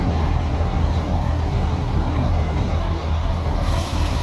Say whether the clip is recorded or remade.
remade